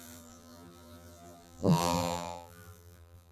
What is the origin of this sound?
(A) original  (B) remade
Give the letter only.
B